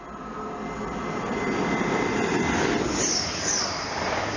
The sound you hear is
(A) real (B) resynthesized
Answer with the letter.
A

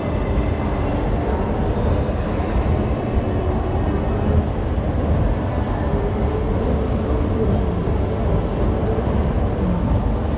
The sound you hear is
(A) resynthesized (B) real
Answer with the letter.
B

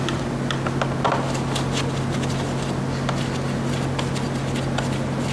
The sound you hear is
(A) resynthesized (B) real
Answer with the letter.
B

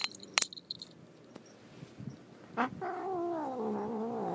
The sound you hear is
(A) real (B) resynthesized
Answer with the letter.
A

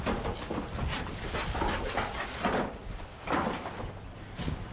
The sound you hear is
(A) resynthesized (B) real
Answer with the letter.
B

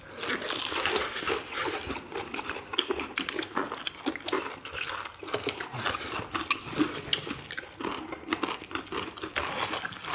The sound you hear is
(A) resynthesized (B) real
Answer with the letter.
B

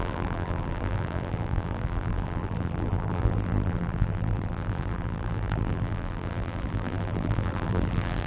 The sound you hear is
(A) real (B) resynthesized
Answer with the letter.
B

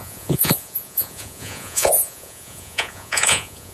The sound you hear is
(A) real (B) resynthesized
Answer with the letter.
B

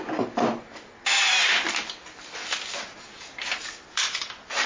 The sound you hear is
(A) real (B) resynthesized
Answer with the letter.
A